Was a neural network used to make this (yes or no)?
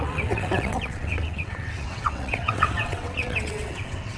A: yes